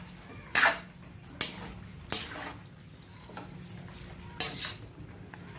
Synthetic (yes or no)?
no